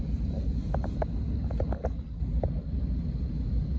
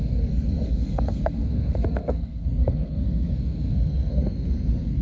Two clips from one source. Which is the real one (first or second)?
first